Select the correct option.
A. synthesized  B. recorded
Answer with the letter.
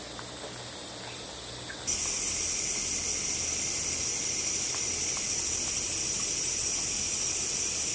B